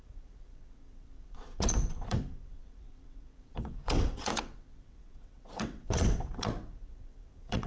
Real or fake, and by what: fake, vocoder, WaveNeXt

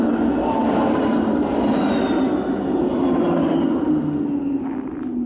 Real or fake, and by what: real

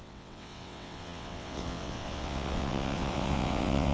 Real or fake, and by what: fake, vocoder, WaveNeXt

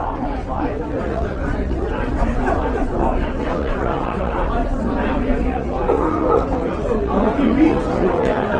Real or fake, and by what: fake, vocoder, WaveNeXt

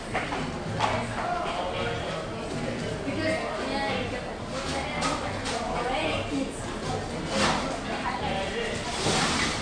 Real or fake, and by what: real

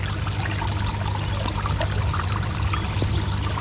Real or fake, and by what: real